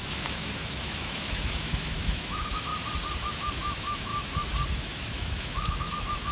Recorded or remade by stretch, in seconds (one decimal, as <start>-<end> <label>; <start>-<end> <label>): 0.0-2.7 remade; 2.7-3.3 recorded; 3.3-4.1 remade; 4.1-4.7 recorded; 4.7-6.3 remade